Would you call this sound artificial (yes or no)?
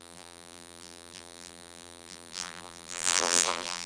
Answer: yes